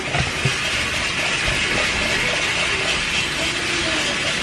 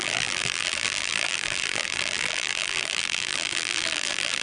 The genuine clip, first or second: first